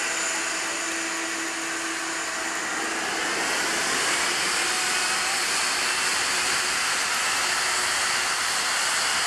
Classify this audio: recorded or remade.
recorded